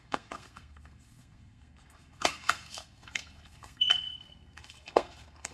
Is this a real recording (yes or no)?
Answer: no